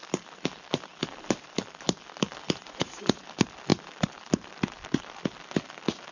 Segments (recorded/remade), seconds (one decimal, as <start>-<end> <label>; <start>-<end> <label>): 0.0-2.6 recorded; 2.6-3.2 remade; 3.2-6.1 recorded